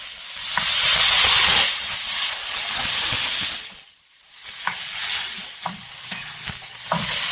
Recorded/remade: recorded